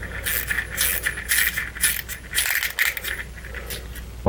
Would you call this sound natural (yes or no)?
yes